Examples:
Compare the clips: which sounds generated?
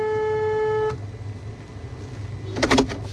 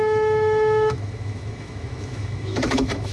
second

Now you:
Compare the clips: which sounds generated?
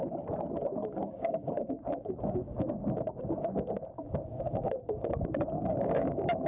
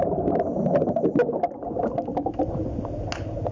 first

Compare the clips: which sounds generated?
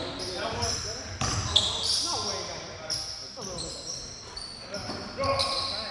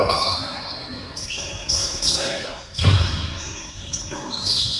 second